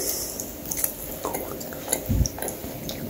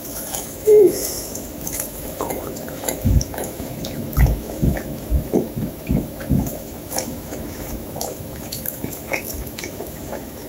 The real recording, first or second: first